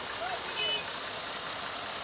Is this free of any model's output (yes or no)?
yes